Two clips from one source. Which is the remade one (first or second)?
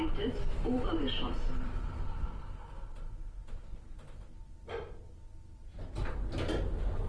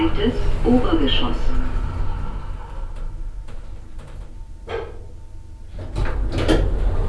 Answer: first